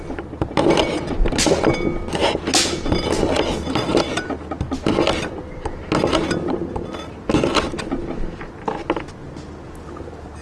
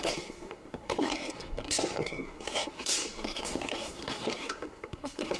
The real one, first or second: first